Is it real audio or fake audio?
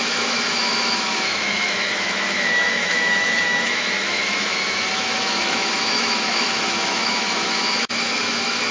fake